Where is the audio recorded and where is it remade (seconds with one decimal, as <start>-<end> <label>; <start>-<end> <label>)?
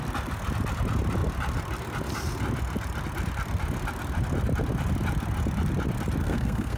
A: 0.0-6.2 recorded; 6.2-6.8 remade